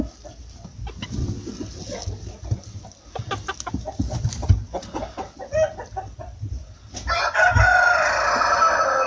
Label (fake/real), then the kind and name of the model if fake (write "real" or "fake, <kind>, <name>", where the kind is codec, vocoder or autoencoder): real